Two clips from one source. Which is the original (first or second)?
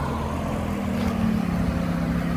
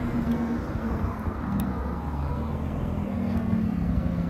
first